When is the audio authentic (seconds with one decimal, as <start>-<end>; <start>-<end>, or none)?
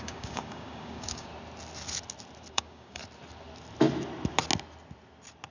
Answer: 1.3-2.5; 3.0-5.5